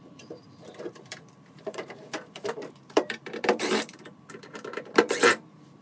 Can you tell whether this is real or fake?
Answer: fake